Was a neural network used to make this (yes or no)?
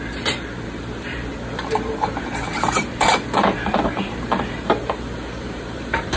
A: yes